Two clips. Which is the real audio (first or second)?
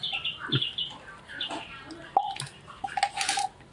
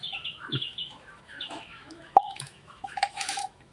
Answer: first